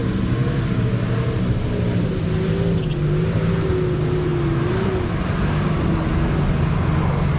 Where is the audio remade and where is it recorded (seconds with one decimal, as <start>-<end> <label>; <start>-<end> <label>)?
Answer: 0.0-2.1 remade; 2.1-2.9 recorded; 2.9-3.5 remade; 3.5-7.4 recorded